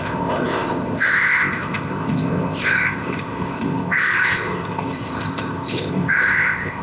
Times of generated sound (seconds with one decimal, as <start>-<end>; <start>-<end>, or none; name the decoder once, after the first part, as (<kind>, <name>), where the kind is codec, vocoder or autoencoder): 0.0-6.8 (codec, ZipCodec)